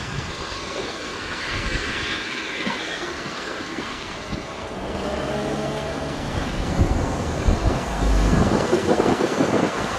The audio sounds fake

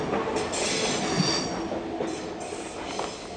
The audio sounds real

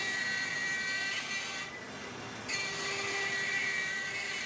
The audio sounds real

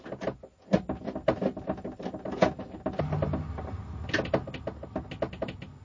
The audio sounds real